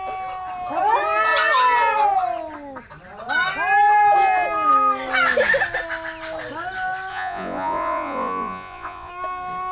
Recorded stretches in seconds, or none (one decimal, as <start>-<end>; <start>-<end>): 0.0-7.1; 9.1-9.7